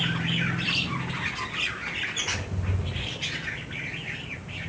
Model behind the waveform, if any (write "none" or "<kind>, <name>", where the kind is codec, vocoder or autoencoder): none